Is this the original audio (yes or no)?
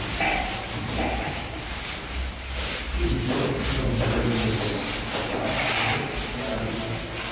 yes